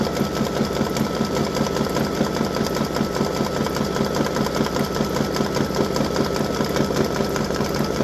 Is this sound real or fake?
real